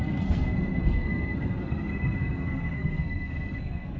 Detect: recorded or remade remade